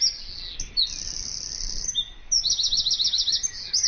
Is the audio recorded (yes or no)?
yes